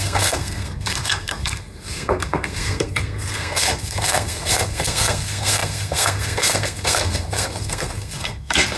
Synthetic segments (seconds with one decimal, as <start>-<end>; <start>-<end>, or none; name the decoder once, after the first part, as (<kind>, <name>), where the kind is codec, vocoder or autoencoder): 0.0-8.8 (codec, SNAC)